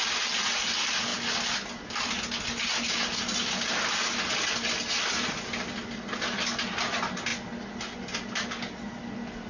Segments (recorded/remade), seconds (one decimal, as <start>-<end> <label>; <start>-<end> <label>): 0.0-9.5 recorded